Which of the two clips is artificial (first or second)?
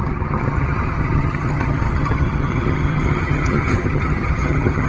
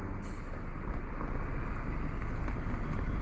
first